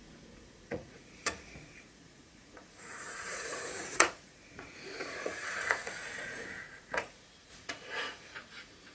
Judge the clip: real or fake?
fake